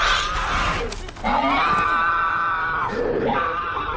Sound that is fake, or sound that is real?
real